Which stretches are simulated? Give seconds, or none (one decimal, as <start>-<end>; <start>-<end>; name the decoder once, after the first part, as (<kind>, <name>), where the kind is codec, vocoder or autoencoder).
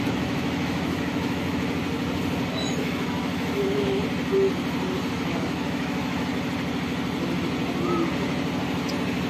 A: 0.0-1.8 (autoencoder, DAC-VAE); 2.5-4.0; 5.1-6.3